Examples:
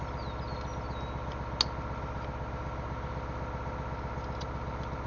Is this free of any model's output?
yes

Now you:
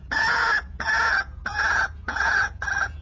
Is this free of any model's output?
no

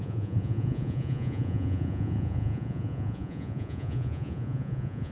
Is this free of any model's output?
no